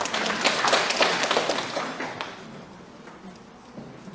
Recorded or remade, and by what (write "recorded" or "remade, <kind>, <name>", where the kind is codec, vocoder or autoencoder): recorded